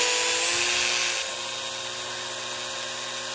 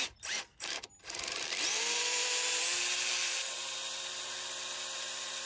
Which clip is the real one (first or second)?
first